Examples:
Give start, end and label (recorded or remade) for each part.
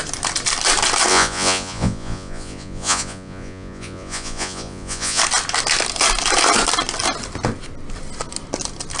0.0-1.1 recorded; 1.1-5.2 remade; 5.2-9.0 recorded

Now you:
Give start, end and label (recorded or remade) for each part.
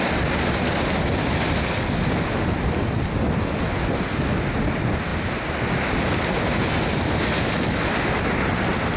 0.0-9.0 recorded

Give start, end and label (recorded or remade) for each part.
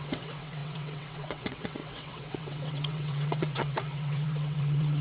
0.0-5.0 remade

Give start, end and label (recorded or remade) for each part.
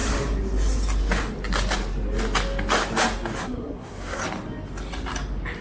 0.0-3.4 recorded; 3.4-4.2 remade; 4.2-5.6 recorded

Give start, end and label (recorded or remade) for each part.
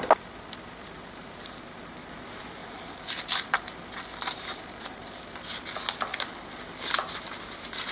0.0-2.6 recorded; 2.6-5.2 remade; 5.2-6.1 recorded; 6.1-6.6 remade; 6.6-7.9 recorded